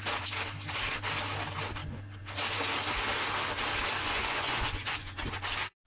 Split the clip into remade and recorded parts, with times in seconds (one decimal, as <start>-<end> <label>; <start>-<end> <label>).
0.0-4.0 recorded; 4.0-5.2 remade; 5.2-5.9 recorded